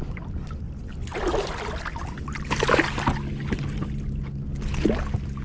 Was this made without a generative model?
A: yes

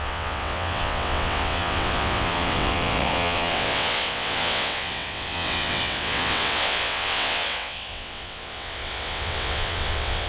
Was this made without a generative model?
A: no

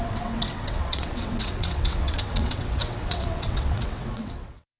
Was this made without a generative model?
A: no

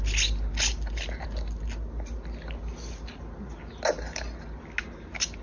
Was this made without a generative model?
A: yes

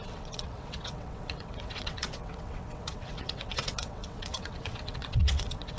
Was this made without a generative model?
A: no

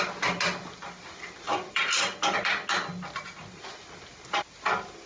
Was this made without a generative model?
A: yes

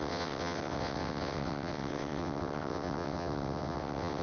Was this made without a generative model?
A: no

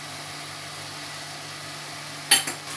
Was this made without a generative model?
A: yes